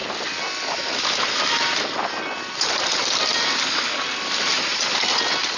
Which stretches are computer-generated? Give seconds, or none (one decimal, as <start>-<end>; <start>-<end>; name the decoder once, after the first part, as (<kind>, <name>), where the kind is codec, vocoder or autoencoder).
none